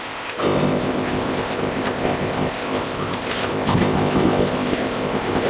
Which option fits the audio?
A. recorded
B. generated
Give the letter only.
B